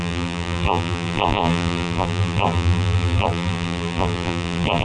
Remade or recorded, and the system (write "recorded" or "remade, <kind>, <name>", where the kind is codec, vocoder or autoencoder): remade, vocoder, BigVGAN v2